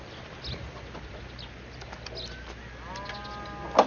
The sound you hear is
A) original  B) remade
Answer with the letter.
A